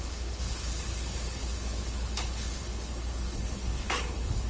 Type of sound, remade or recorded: remade